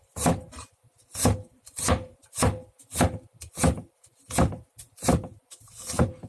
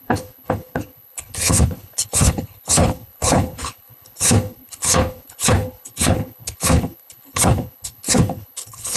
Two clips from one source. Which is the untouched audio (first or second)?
first